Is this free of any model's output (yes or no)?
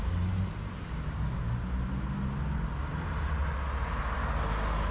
yes